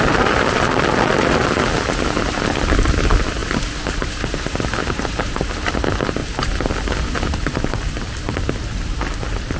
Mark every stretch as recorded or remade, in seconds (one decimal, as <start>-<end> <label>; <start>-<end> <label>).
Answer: 0.0-9.6 recorded